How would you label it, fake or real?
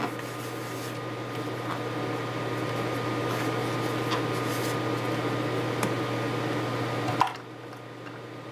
real